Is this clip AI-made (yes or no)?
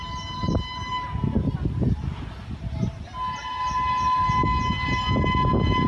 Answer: no